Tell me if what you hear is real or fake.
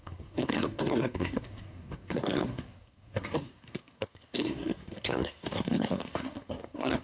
fake